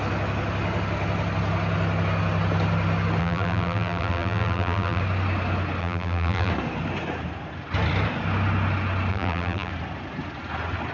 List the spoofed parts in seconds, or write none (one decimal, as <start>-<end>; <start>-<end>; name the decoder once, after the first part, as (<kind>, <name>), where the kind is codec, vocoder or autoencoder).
3.2-5.0 (vocoder, BigVGAN v2); 5.8-6.5; 9.1-9.7